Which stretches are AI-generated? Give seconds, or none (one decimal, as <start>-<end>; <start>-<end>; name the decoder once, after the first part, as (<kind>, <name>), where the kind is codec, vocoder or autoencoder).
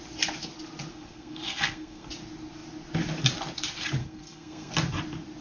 0.9-2.1 (codec, SNAC); 4.0-4.7